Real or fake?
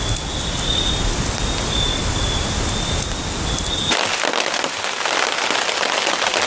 real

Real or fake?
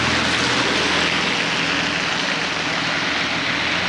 real